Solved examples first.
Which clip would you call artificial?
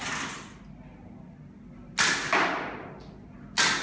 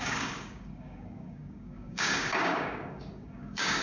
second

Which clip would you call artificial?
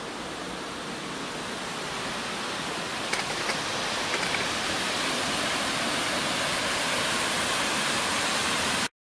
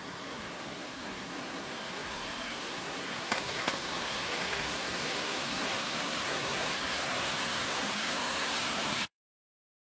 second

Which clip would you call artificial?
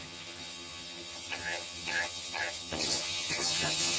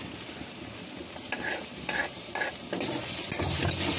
first